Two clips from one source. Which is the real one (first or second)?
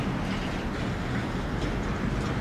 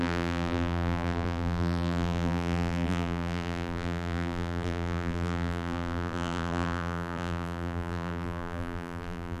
first